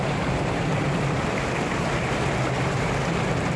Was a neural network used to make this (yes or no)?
no